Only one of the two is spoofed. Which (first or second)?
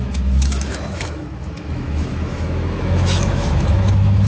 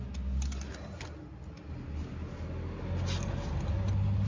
first